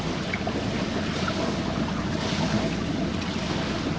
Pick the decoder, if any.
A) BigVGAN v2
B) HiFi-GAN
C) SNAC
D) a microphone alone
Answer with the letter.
D